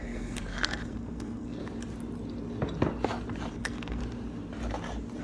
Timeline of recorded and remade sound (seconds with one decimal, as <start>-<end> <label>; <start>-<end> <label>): 0.0-1.6 remade; 1.6-3.5 recorded; 3.5-4.0 remade; 4.0-5.2 recorded